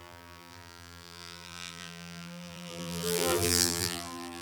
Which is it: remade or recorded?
remade